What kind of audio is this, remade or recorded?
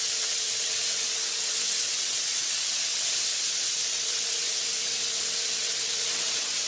remade